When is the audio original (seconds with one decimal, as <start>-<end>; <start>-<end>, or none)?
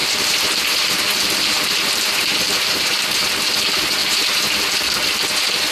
3.4-4.0; 4.5-5.7